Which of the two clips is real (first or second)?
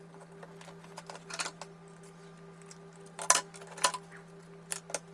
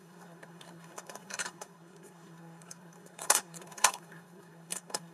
first